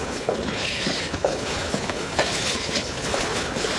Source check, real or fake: fake